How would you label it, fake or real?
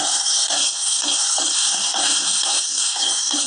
fake